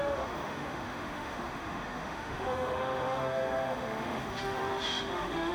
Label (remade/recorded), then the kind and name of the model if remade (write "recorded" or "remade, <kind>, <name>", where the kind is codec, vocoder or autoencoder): remade, autoencoder, DAC-VAE